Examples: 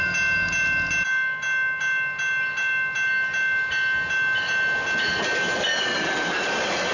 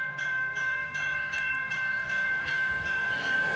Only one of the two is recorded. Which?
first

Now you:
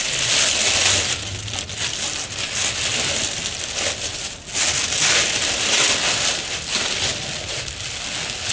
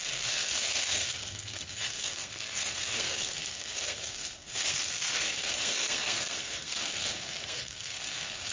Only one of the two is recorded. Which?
first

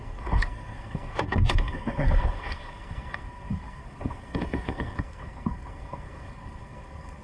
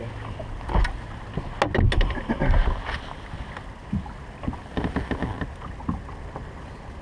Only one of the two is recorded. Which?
second